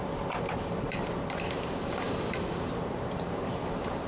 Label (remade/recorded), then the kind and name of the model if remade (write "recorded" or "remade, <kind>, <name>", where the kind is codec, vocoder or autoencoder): remade, vocoder, BigVGAN v2